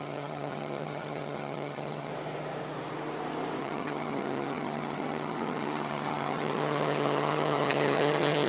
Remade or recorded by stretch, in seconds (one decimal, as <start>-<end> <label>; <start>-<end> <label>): 0.0-2.1 remade; 2.1-3.6 recorded; 3.6-8.5 remade